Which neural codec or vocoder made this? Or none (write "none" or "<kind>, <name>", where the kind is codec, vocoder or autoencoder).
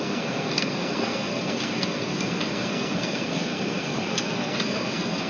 codec, SNAC